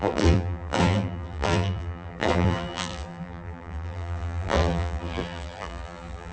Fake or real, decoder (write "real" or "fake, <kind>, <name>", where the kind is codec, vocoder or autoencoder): fake, vocoder, BigVGAN v2